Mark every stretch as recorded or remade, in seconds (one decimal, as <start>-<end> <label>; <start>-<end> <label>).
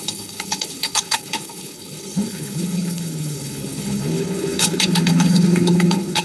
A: 0.0-6.2 remade